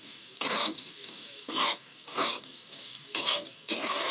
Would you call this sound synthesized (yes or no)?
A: yes